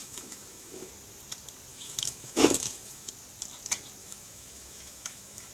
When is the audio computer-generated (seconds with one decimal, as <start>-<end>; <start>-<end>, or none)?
0.0-0.9; 1.7-3.1; 4.0-5.5